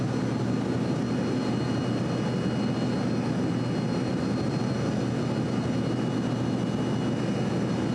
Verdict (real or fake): real